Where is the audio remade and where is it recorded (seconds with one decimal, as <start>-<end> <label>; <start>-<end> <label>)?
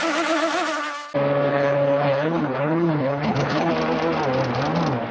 0.0-1.5 recorded; 1.5-3.7 remade; 3.7-5.1 recorded